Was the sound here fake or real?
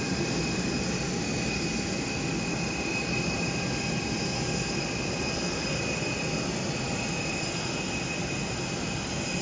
real